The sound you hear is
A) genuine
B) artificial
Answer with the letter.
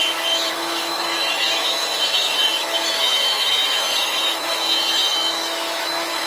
B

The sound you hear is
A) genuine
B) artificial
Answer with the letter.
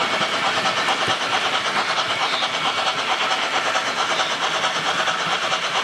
A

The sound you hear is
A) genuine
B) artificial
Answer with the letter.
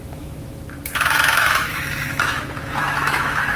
B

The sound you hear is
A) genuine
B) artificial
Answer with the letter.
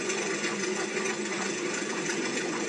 B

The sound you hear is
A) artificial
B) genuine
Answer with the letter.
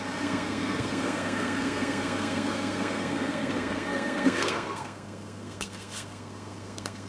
A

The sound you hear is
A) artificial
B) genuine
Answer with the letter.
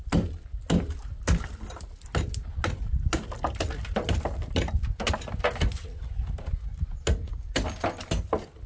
B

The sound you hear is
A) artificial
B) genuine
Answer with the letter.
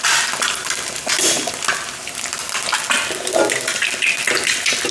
B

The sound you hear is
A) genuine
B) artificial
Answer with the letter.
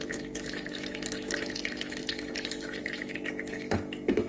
B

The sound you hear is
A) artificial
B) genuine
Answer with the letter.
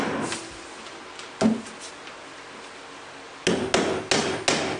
B